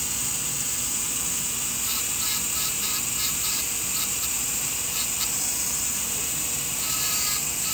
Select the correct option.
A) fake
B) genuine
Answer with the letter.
A